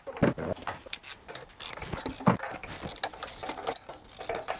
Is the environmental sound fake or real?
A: real